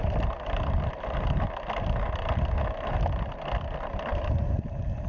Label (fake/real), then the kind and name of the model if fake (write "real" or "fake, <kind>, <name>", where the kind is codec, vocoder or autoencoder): real